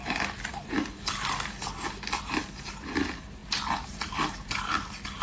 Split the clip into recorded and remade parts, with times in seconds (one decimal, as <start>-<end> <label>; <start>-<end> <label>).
0.0-5.2 recorded